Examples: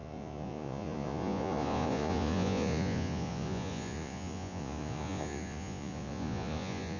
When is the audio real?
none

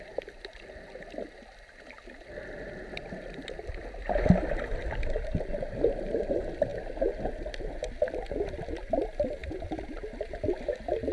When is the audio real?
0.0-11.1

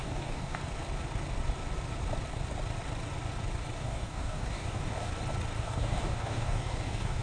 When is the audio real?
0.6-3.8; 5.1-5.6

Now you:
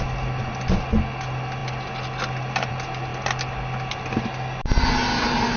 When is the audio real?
0.0-5.6

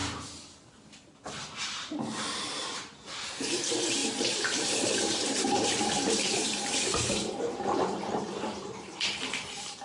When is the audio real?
0.0-1.3

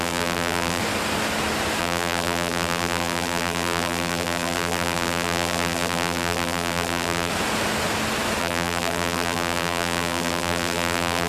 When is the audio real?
0.8-1.8; 7.3-8.4